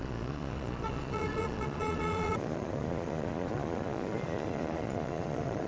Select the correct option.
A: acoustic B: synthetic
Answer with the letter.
B